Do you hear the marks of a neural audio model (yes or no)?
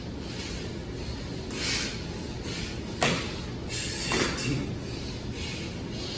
no